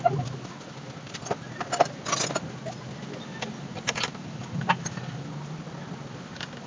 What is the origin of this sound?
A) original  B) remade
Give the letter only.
A